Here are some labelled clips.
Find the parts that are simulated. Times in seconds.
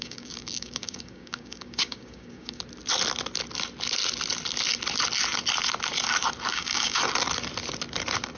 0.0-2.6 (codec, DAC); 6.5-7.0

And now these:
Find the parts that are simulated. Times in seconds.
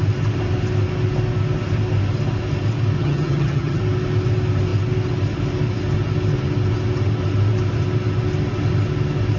3.0-3.8 (vocoder, HiFi-GAN)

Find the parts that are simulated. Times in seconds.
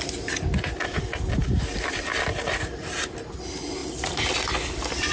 none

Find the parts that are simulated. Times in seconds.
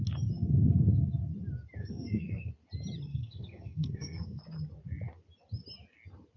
1.8-2.5 (codec, SNAC); 3.1-4.4